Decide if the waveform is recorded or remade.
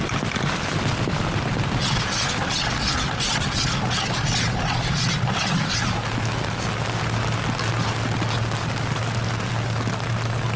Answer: recorded